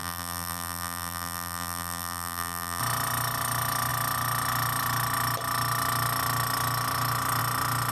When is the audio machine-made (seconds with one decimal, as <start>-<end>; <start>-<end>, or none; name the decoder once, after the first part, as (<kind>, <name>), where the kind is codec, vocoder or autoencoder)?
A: 0.0-2.8 (vocoder, BigVGAN v2)